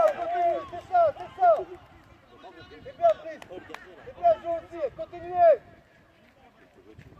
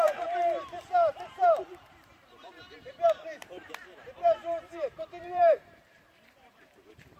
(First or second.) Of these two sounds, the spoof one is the second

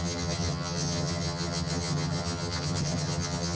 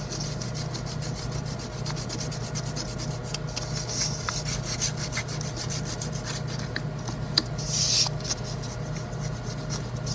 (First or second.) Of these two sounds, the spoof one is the first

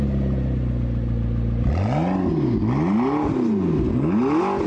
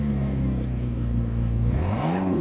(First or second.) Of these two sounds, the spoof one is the second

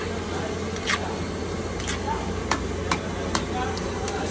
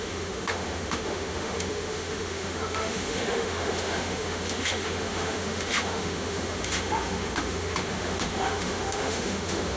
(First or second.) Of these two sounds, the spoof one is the second